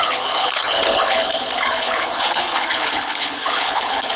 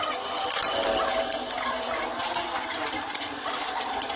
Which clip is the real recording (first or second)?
second